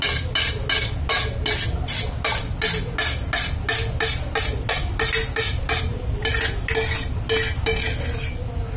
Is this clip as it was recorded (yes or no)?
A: yes